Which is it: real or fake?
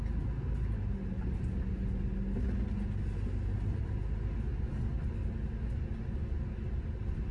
real